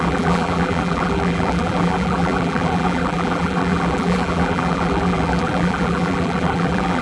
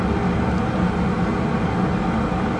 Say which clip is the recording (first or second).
second